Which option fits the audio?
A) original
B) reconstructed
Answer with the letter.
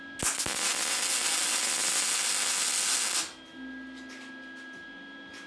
A